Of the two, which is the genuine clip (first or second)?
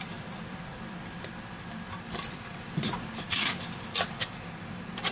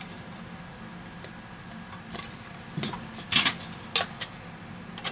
second